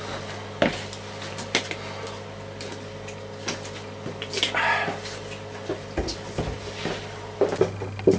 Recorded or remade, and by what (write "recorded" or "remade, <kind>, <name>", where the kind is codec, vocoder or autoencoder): recorded